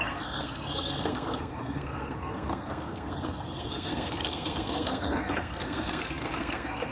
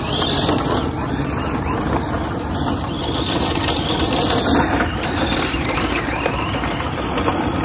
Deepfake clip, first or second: first